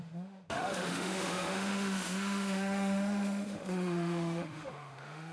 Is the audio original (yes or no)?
no